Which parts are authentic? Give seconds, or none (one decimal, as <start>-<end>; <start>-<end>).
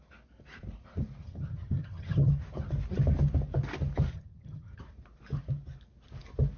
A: 0.0-1.2; 2.3-4.1; 4.8-6.6